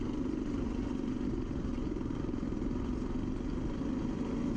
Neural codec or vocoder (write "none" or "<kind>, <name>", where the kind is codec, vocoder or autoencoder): none